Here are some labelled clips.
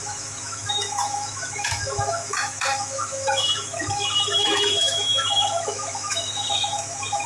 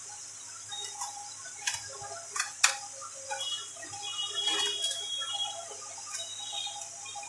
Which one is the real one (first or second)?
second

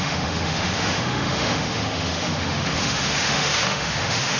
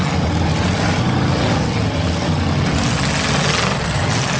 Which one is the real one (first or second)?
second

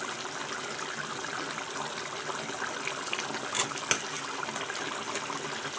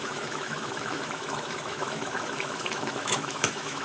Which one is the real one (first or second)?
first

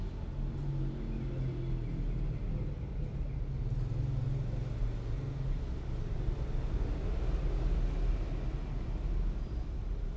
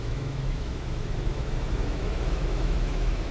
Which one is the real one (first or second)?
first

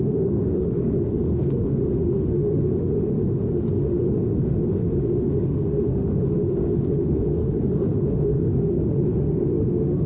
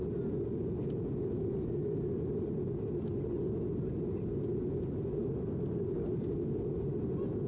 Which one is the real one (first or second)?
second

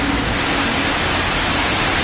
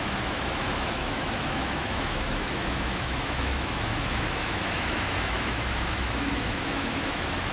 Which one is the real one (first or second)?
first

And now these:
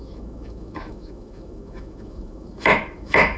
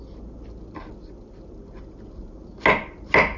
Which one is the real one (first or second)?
second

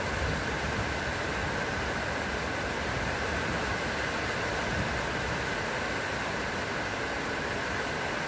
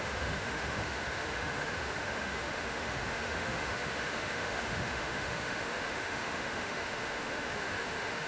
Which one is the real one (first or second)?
first